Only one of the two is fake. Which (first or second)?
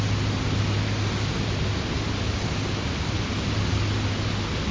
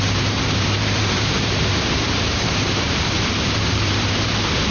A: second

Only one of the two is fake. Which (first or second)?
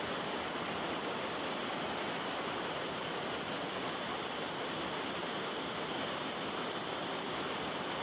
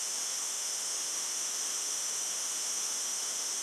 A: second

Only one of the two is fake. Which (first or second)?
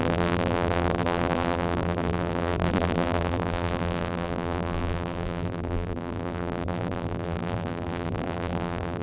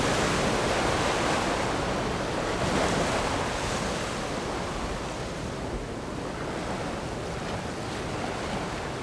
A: first